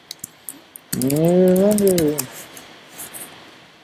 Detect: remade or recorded recorded